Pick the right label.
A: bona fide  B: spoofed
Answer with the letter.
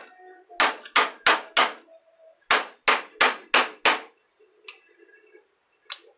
A